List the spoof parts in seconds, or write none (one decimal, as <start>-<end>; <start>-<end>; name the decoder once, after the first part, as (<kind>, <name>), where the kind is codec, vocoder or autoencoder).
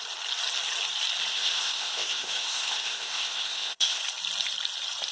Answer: 1.3-4.0 (codec, ZipCodec)